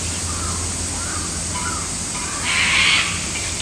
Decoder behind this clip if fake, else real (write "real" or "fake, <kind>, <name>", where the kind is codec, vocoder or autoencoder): real